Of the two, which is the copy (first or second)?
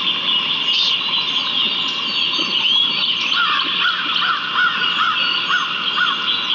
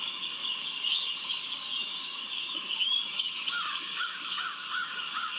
second